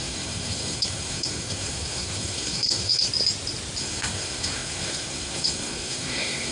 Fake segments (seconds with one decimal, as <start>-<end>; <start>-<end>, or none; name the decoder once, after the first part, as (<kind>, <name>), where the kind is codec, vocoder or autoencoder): 0.0-3.1 (codec, SNAC); 3.8-6.5